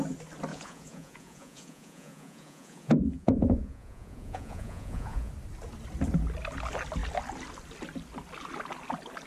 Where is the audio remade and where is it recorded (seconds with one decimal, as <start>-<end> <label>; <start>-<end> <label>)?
0.0-0.5 recorded; 0.5-5.3 remade; 5.3-9.3 recorded